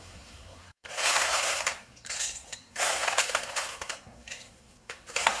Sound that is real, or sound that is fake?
fake